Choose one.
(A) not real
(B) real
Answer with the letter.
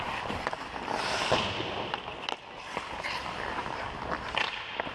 A